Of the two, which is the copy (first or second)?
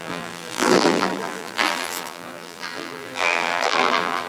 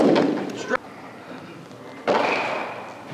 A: first